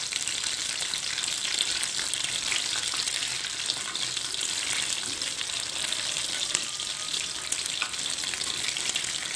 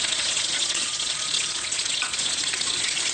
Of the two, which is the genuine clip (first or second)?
first